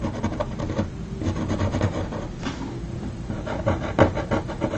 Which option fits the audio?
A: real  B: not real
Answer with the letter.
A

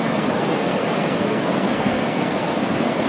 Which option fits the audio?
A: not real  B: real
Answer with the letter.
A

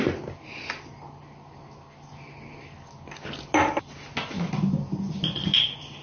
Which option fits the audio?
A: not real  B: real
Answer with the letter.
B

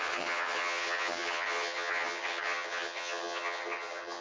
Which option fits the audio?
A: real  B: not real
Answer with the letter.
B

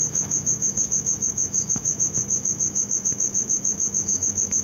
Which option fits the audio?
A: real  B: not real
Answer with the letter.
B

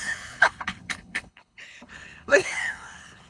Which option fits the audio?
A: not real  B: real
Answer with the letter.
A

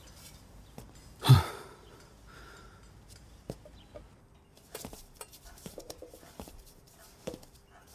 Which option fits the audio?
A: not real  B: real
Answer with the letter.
A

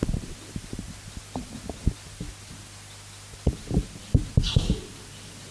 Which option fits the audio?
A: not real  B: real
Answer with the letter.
B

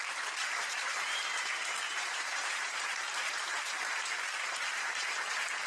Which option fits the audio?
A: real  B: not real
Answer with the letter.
B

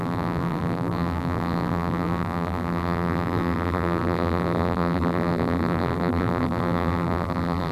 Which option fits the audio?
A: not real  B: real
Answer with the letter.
A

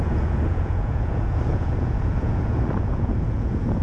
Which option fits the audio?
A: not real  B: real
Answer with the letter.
A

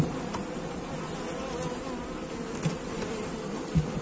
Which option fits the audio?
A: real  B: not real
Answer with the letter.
A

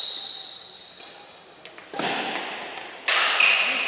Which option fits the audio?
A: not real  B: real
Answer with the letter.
B